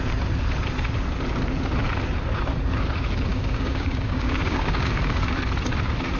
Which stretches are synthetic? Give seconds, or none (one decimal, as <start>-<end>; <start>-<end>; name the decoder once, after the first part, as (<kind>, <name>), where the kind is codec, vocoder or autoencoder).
3.3-5.4 (codec, DAC)